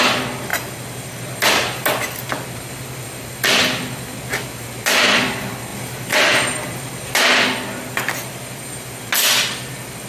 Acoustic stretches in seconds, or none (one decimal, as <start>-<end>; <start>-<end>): 0.0-10.1